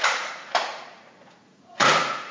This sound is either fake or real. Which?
fake